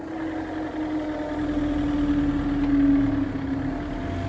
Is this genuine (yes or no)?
yes